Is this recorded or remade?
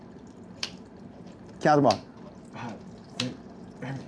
remade